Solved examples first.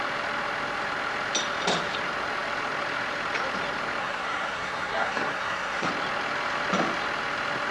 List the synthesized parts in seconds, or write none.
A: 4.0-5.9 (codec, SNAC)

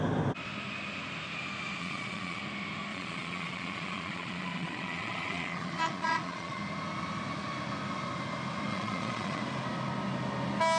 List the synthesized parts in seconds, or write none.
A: 1.8-2.4 (vocoder, Vocos); 2.9-6.6; 8.7-9.4

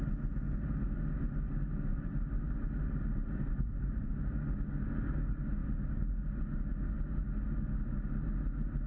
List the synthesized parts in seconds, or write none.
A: 1.9-4.1 (vocoder, BigVGAN v2)

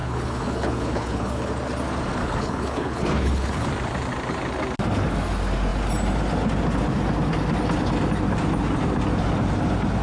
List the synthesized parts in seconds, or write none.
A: 0.0-1.5 (codec, HILCodec); 2.2-3.7

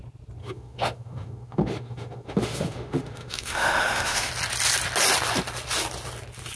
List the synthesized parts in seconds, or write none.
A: 0.4-4.3 (autoencoder, DAC-VAE)

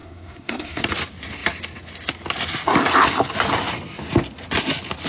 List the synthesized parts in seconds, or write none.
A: 0.0-0.8 (codec, SNAC)

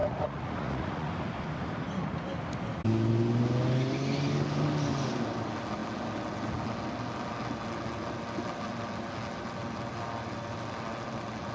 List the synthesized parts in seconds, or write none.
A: 0.0-1.1 (vocoder, Vocos)

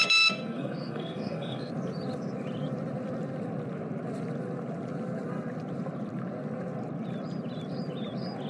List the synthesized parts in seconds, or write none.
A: 0.0-1.7 (codec, SNAC)